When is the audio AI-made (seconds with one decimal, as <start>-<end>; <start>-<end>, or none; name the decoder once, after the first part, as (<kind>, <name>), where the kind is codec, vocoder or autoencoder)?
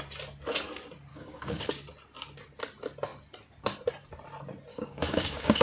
1.1-1.7 (codec, DAC); 4.7-5.6